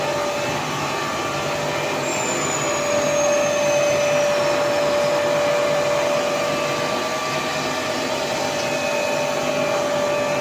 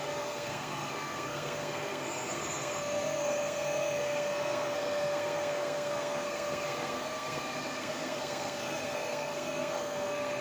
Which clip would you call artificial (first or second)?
second